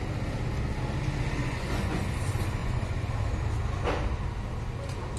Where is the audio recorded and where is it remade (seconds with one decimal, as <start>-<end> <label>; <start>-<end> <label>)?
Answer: 0.0-1.4 recorded; 1.4-2.0 remade; 2.0-2.6 recorded; 2.6-3.1 remade; 3.1-5.2 recorded